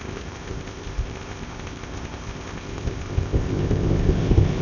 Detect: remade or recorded remade